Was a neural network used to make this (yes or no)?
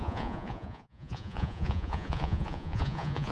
yes